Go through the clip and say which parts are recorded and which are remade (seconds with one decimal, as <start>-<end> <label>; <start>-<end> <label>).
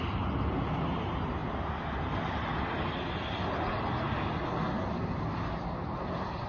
0.0-6.5 recorded